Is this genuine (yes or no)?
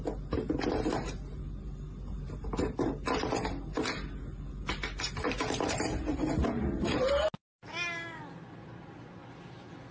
yes